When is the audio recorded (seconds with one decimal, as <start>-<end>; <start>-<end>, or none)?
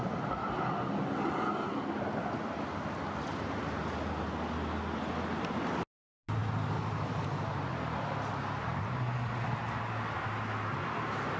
0.0-11.4